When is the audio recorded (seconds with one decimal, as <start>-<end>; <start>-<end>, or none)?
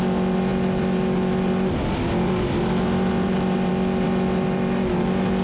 0.0-5.4